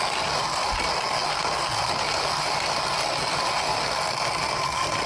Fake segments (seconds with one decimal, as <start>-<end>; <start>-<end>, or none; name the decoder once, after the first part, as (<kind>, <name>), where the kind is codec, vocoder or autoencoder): none